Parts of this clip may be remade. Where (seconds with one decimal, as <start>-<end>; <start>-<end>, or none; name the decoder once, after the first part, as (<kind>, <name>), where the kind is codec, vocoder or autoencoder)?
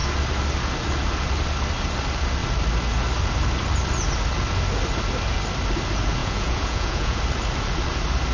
6.2-7.2 (vocoder, Vocos)